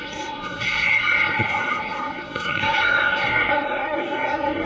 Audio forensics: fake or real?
fake